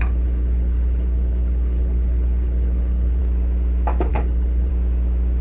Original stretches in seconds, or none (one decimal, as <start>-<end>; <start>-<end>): 3.2-4.1; 4.7-5.4

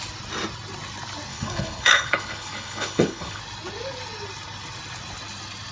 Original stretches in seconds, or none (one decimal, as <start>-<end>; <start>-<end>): 0.0-1.3; 3.4-5.7

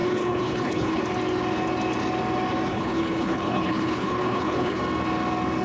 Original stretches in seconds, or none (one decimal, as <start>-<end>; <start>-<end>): 1.0-2.7; 4.8-5.6